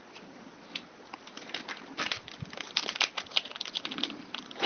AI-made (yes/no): no